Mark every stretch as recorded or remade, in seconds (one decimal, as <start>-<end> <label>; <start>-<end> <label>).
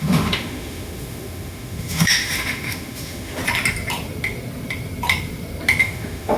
0.0-3.4 remade; 3.4-5.8 recorded; 5.8-6.4 remade